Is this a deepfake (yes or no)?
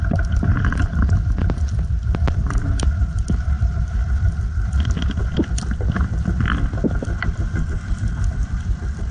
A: no